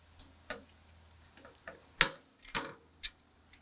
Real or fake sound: real